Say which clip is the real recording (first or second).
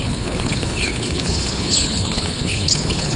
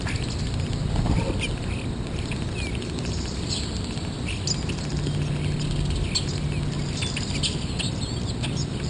second